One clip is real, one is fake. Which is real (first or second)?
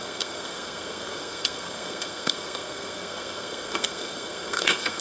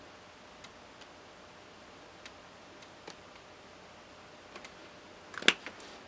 second